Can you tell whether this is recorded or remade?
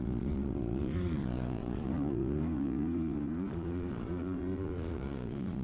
remade